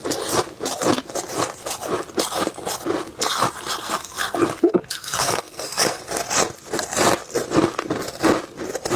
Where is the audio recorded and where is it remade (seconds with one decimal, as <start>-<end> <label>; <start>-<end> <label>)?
0.0-3.8 recorded; 3.8-6.0 remade; 6.0-9.0 recorded